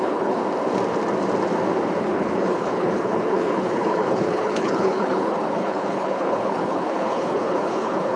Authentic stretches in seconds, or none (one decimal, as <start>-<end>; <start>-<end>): 0.4-2.0